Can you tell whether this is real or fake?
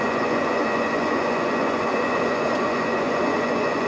fake